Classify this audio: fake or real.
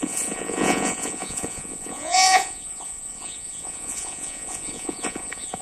fake